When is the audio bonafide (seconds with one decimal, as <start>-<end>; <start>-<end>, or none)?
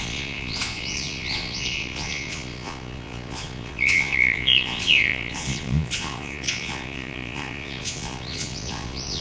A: none